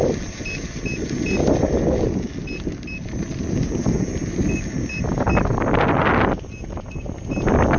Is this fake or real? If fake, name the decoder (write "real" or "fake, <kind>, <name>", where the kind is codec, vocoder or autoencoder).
real